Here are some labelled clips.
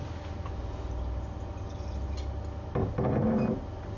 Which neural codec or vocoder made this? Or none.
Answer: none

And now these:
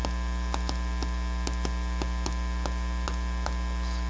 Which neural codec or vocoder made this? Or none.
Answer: none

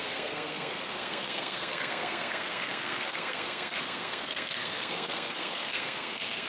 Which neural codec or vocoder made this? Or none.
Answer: codec, SNAC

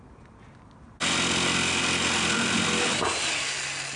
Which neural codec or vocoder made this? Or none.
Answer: none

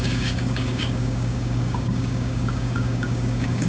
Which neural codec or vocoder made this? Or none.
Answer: codec, DAC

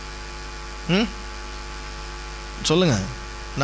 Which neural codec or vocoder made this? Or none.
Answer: none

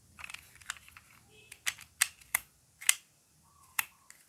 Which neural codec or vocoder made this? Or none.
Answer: none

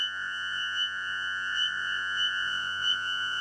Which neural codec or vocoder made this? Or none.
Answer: vocoder, Vocos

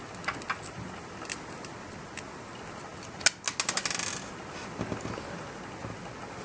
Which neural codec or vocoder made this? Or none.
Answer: none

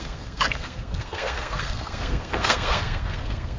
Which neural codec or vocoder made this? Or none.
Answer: codec, SNAC